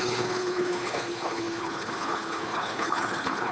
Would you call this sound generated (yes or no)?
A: yes